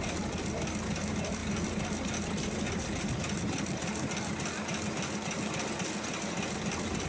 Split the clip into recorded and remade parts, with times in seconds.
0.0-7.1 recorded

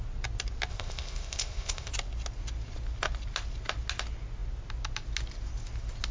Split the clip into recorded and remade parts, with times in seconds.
0.0-0.7 recorded; 0.7-1.9 remade; 1.9-6.1 recorded

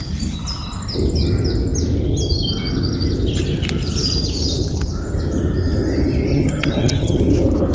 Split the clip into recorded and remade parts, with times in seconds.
0.0-6.3 recorded; 6.3-7.2 remade; 7.2-7.7 recorded

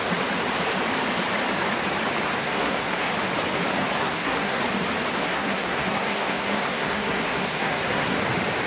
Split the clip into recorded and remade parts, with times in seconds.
0.0-2.4 recorded; 2.4-3.1 remade; 3.1-4.0 recorded; 4.0-4.6 remade; 4.6-5.1 recorded; 5.1-8.2 remade; 8.2-8.7 recorded

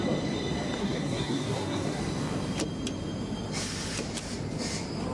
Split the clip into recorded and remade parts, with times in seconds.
0.0-0.8 recorded; 0.8-2.0 remade; 2.0-5.1 recorded